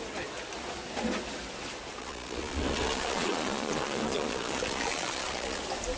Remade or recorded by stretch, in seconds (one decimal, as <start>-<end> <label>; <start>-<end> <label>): 0.0-2.0 recorded; 2.0-5.6 remade; 5.6-6.0 recorded